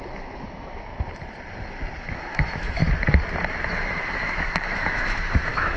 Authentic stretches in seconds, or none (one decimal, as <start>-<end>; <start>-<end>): 0.9-2.0; 2.8-3.7